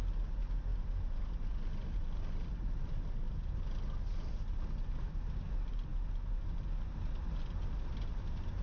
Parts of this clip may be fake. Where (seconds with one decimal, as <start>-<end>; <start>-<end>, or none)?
0.7-4.3